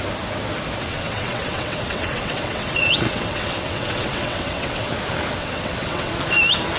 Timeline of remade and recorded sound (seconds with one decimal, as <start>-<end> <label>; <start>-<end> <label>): 0.0-0.8 recorded; 0.8-4.9 remade; 4.9-5.4 recorded; 5.4-6.1 remade; 6.1-6.8 recorded